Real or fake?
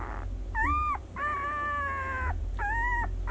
real